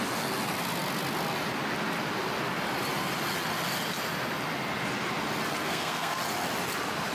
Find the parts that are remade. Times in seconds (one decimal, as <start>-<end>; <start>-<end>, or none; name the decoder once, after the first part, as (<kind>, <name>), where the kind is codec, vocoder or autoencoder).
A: 5.6-6.2 (codec, SNAC)